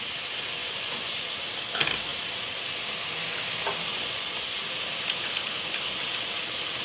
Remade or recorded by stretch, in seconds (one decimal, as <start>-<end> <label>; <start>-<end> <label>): 0.0-0.6 recorded; 0.6-1.3 remade; 1.3-3.9 recorded; 3.9-4.6 remade; 4.6-6.8 recorded